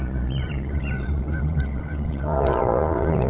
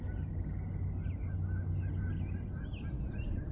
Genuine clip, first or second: second